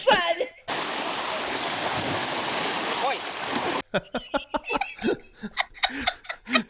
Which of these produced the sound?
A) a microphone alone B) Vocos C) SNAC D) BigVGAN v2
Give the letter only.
A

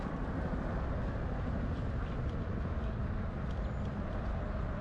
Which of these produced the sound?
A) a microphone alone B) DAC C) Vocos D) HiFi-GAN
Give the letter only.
A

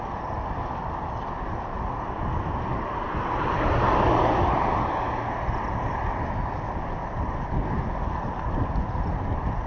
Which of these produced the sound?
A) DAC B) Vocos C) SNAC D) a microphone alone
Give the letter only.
D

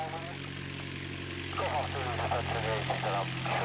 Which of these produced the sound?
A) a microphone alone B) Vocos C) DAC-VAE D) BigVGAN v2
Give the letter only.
A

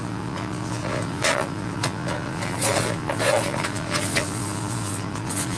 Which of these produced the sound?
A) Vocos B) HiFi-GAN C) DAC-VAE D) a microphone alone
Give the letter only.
A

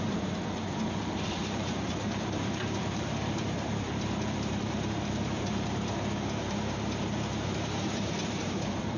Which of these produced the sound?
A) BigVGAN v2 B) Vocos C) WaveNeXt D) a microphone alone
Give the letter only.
A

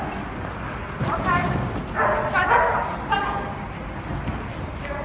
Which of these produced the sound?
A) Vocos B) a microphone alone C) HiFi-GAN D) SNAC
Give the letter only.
B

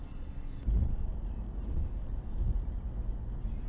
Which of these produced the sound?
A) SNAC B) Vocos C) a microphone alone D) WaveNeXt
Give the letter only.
C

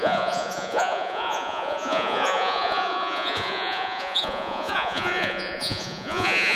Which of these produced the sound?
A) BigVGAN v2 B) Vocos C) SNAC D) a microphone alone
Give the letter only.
B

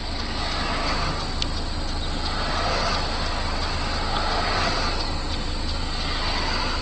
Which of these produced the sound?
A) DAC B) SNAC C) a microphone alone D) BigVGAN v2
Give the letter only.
C